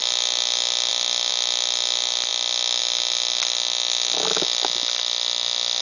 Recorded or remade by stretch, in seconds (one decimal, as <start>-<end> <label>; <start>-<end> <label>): 0.0-5.8 recorded